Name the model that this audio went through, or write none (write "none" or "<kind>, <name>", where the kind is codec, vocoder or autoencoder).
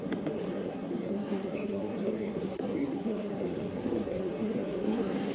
codec, SNAC